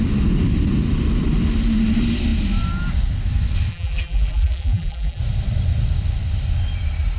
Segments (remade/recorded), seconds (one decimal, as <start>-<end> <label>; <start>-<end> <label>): 0.0-3.7 recorded; 3.7-5.2 remade; 5.2-7.2 recorded